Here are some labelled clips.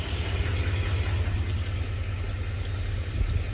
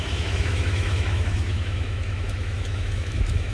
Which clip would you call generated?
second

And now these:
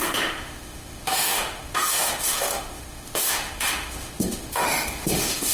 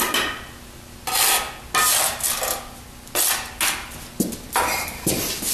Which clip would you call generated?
first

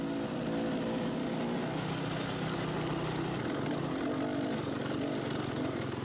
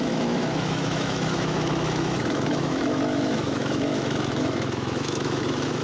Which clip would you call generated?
second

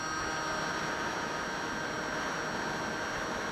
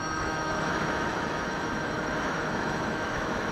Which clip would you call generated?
second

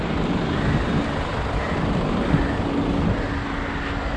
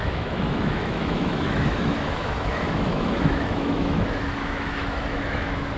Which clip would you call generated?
second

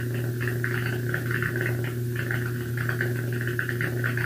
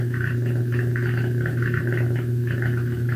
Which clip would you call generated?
second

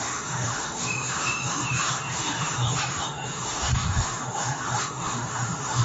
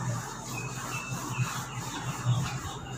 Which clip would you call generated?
first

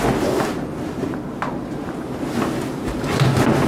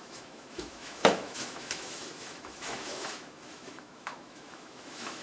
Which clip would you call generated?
second